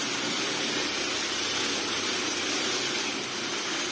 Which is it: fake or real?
real